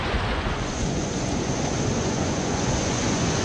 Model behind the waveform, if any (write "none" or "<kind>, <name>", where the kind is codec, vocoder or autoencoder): vocoder, Vocos